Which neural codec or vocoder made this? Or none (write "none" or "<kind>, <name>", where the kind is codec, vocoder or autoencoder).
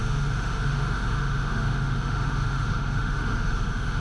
autoencoder, DAC-VAE